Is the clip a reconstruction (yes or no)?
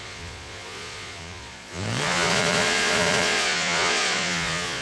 yes